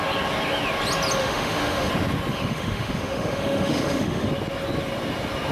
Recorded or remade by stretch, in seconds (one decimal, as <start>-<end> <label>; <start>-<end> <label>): 0.0-1.2 recorded; 1.2-1.9 remade; 1.9-2.3 recorded; 2.3-4.3 remade; 4.3-5.5 recorded